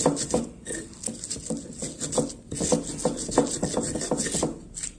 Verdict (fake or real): real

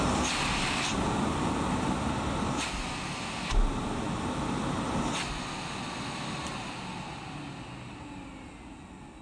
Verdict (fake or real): real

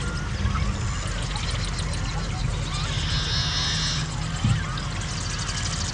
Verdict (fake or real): real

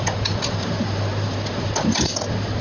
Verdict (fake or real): real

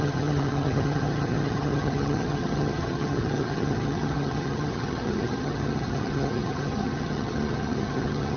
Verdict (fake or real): fake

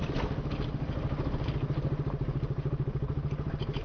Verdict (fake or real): real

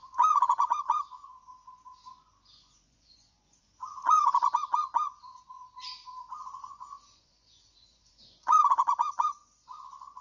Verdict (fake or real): fake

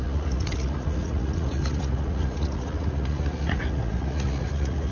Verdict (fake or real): fake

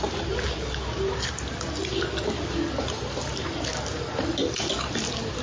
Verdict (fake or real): real